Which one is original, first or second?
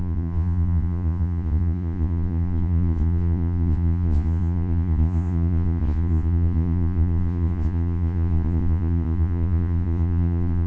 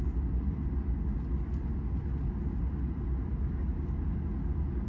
second